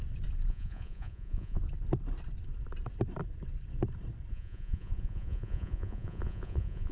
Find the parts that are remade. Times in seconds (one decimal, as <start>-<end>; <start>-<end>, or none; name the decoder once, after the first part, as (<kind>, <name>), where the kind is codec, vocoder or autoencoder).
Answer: 0.5-1.6 (vocoder, Vocos); 4.3-6.9